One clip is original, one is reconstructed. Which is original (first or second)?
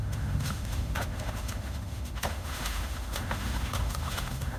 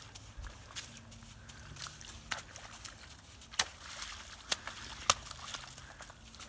second